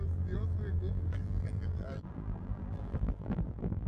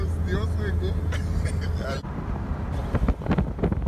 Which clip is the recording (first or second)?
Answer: second